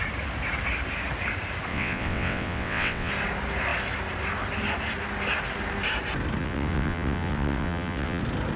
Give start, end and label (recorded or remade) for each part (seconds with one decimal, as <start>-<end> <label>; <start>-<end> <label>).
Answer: 0.0-1.7 recorded; 1.7-3.1 remade; 3.1-6.4 recorded; 6.4-8.2 remade; 8.2-8.6 recorded